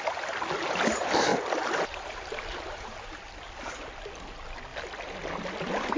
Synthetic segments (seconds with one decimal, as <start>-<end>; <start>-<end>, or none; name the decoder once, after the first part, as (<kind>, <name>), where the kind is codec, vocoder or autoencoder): 1.3-3.2 (vocoder, BigVGAN v2)